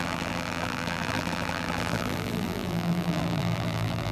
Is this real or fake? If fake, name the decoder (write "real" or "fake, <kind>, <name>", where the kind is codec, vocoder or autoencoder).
fake, vocoder, BigVGAN v2